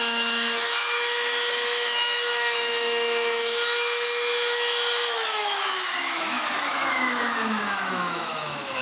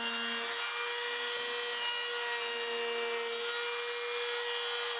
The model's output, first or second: first